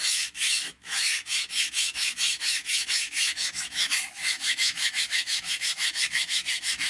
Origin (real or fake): fake